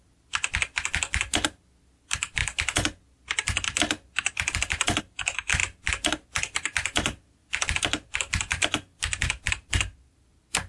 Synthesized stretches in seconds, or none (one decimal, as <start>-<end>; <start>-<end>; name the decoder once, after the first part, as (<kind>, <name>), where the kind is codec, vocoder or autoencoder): none